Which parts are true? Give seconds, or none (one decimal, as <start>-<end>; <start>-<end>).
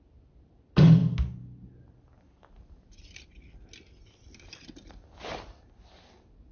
0.0-6.5